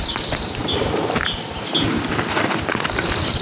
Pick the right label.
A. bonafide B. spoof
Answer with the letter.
A